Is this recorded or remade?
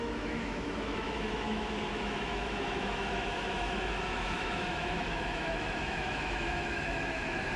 remade